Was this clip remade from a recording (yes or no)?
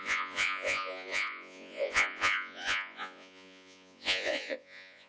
yes